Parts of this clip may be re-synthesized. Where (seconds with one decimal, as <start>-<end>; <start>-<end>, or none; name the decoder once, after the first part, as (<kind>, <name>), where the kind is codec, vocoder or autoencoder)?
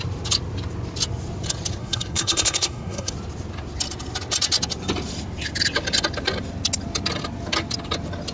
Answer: 1.8-3.1 (codec, SNAC)